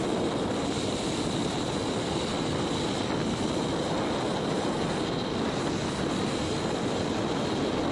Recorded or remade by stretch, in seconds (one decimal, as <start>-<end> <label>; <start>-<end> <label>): 0.0-7.9 recorded